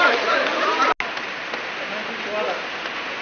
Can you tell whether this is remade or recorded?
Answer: recorded